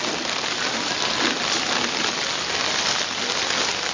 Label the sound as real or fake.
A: real